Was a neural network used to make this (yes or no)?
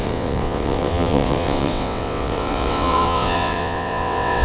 yes